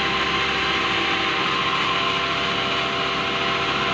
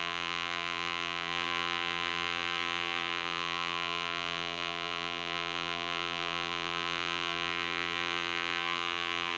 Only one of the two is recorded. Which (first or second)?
first